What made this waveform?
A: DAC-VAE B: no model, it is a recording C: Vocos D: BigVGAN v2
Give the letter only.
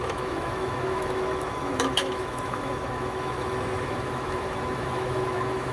A